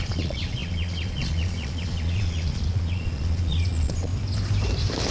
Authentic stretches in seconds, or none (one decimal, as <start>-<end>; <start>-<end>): 4.1-5.1